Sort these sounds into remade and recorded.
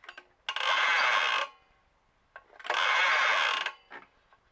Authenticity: recorded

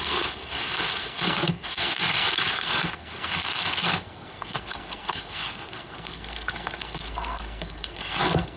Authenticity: remade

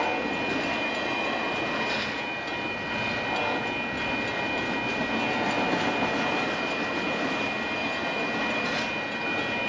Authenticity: recorded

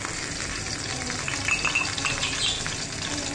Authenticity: recorded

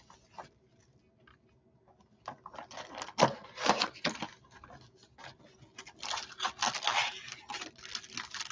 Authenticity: recorded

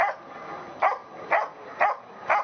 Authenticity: recorded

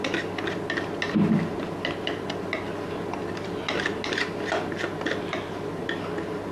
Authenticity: recorded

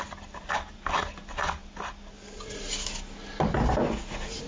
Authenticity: recorded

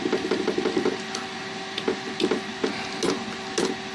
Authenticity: recorded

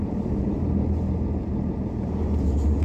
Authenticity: recorded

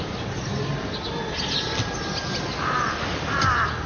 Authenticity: recorded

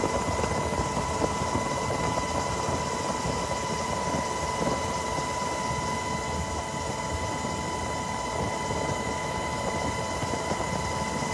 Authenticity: recorded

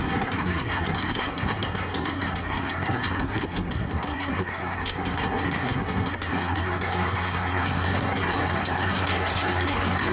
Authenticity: remade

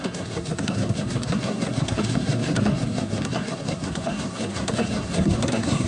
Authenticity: remade